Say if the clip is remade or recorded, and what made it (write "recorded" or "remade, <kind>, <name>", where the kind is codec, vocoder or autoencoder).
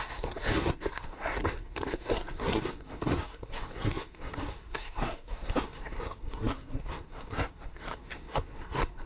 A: remade, codec, SNAC